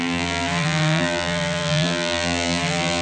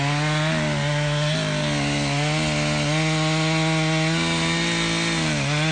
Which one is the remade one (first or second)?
first